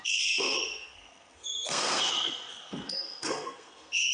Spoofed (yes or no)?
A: yes